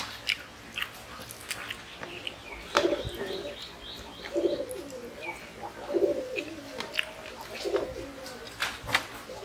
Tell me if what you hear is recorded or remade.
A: recorded